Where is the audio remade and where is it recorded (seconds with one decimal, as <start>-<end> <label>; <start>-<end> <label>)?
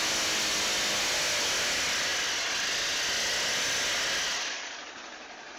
0.0-5.6 recorded